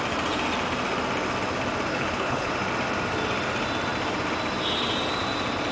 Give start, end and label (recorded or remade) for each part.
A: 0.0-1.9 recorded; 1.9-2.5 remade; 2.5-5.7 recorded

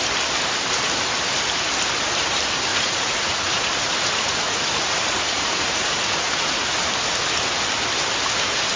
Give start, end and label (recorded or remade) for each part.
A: 0.0-2.7 recorded; 2.7-6.9 remade; 6.9-8.8 recorded

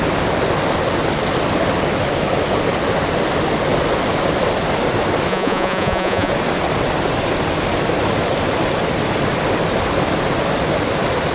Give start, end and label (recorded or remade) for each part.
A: 0.0-5.3 recorded; 5.3-6.3 remade; 6.3-11.3 recorded

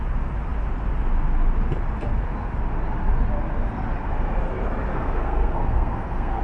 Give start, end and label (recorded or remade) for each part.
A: 0.0-4.9 recorded; 4.9-6.4 remade

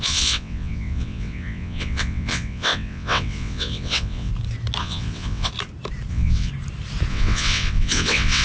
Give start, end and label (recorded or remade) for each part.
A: 0.0-4.3 remade; 4.3-4.8 recorded; 4.8-5.5 remade; 5.5-6.1 recorded; 6.1-6.5 remade; 6.5-7.1 recorded; 7.1-8.4 remade

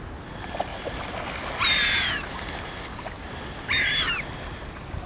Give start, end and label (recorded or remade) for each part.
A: 0.0-5.1 recorded